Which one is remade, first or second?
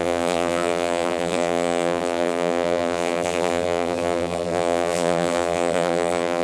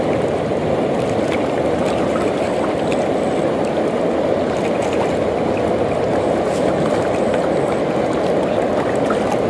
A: first